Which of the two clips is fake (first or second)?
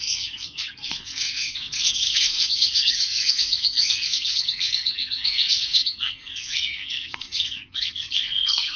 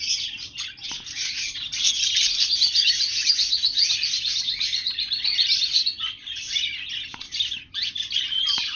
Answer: first